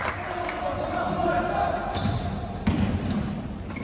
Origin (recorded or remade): recorded